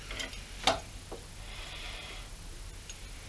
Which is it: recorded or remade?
recorded